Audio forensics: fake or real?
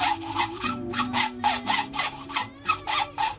fake